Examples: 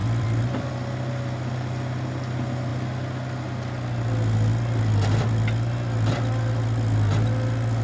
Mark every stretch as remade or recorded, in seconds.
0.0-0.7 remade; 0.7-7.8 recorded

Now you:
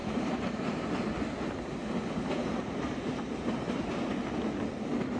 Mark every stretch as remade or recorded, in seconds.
0.0-0.9 remade; 0.9-2.4 recorded; 2.4-3.9 remade; 3.9-5.2 recorded

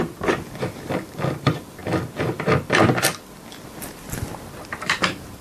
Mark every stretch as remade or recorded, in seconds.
0.0-1.8 remade; 1.8-5.0 recorded; 5.0-5.4 remade

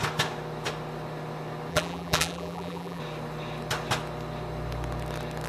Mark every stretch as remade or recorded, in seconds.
0.0-1.7 recorded; 1.7-3.0 remade; 3.0-5.5 recorded

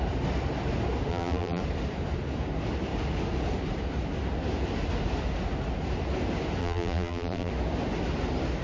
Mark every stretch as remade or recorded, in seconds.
0.0-1.1 recorded; 1.1-1.6 remade; 1.6-6.6 recorded; 6.6-7.5 remade; 7.5-8.6 recorded

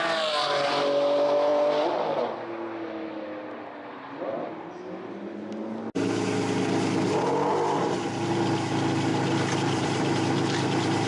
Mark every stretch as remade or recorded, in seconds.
0.0-9.1 recorded; 9.1-11.1 remade

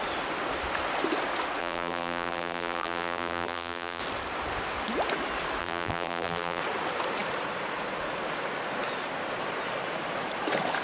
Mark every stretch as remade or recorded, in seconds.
0.0-1.6 recorded; 1.6-4.0 remade; 4.0-5.6 recorded; 5.6-6.6 remade; 6.6-10.8 recorded